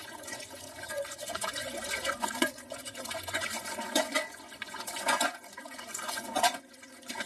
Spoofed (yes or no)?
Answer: yes